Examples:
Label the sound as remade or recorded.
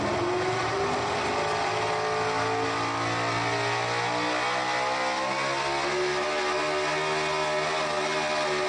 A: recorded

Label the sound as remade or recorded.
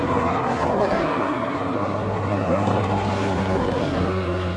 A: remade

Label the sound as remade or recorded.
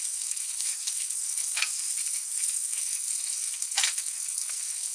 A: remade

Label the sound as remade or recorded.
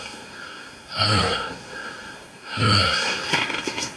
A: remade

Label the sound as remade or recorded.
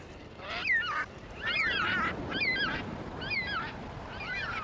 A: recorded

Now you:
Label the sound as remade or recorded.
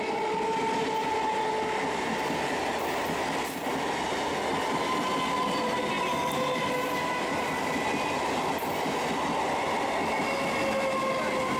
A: recorded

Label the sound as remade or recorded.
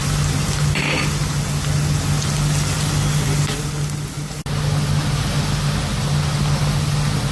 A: recorded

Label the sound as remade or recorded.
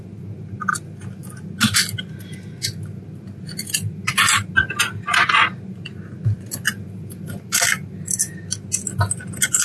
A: recorded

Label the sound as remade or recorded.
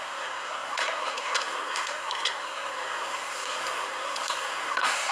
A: remade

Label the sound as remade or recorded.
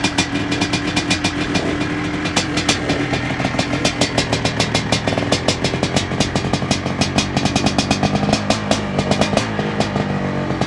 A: recorded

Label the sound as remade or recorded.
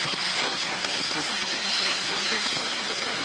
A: remade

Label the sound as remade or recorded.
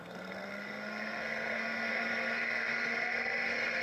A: remade